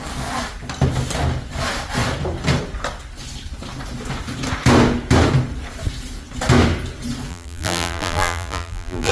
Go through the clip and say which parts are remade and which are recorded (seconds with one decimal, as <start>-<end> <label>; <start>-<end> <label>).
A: 0.0-7.3 recorded; 7.3-9.1 remade